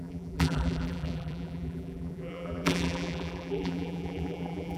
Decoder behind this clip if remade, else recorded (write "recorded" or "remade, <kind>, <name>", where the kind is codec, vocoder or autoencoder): remade, vocoder, BigVGAN v2